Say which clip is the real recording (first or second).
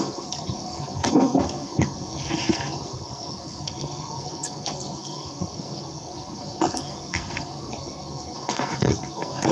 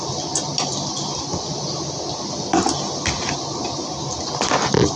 second